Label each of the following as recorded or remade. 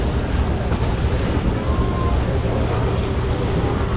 recorded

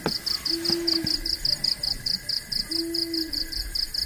recorded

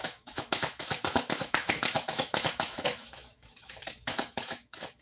remade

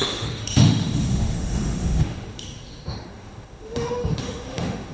remade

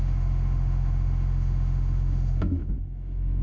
remade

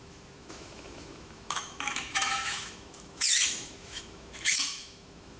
remade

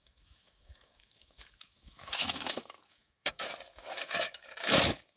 remade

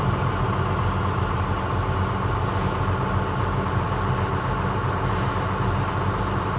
recorded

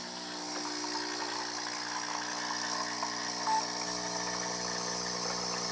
recorded